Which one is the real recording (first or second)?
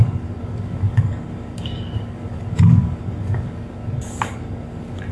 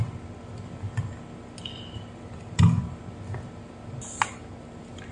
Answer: second